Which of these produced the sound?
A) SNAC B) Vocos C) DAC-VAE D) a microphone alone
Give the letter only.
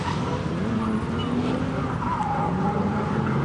D